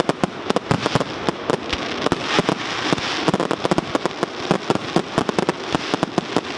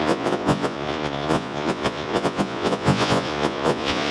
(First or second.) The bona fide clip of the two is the first